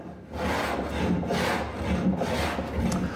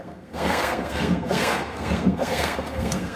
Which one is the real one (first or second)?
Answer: first